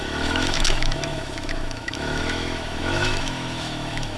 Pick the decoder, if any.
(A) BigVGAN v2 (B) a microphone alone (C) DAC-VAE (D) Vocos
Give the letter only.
C